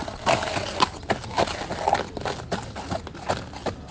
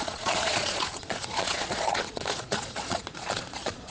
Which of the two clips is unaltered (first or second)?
first